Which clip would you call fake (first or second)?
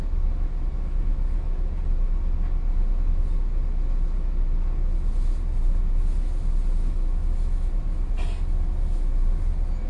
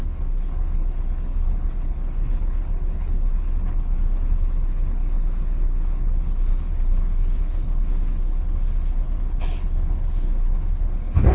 second